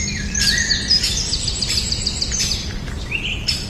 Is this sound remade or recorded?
remade